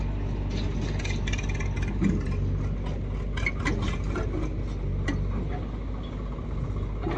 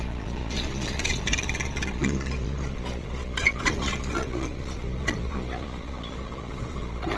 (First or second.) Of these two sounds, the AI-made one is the second